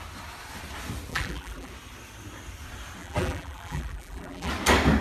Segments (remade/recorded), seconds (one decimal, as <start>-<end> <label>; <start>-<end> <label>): 0.0-1.1 recorded; 1.1-1.7 remade; 1.7-3.0 recorded; 3.0-4.5 remade; 4.5-5.0 recorded